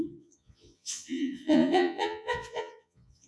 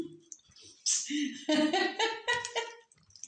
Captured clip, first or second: second